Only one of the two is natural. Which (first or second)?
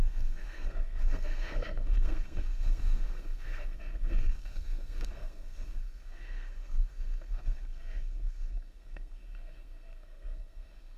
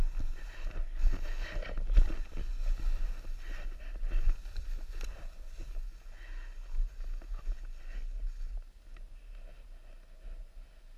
second